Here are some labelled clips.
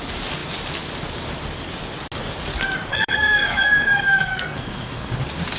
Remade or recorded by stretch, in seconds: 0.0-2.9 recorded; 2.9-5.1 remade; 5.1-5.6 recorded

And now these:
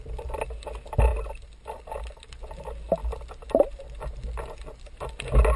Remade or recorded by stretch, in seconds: 0.0-5.6 recorded